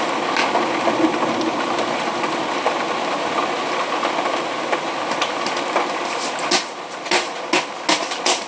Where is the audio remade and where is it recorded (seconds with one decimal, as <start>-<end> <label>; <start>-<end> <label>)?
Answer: 0.0-8.5 recorded